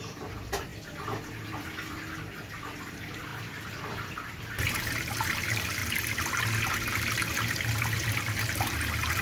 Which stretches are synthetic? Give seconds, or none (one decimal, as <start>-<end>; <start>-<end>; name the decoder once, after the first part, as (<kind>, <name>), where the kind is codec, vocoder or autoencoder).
0.0-0.7 (vocoder, BigVGAN v2); 2.9-5.8; 7.8-9.2